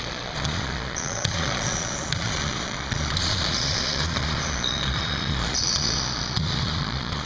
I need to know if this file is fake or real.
fake